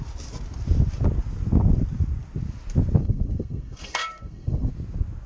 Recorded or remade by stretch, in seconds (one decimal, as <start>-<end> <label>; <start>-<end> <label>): 0.0-3.0 recorded; 3.0-4.7 remade; 4.7-5.3 recorded